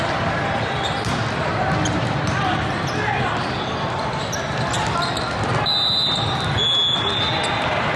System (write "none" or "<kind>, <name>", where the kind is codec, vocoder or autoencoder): none